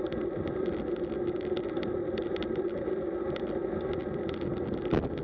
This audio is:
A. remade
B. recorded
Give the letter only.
B